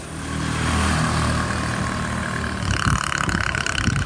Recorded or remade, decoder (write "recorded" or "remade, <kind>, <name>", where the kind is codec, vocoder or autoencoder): recorded